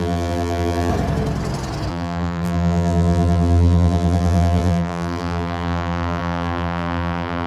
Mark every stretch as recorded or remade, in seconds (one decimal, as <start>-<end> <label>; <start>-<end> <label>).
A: 0.0-0.9 remade; 0.9-1.9 recorded; 1.9-7.5 remade